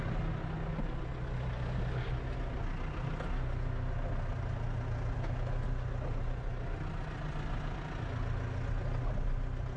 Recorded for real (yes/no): yes